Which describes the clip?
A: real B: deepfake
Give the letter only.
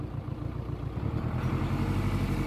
A